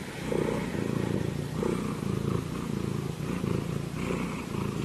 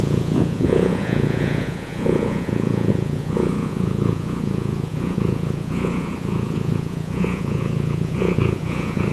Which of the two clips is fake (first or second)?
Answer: second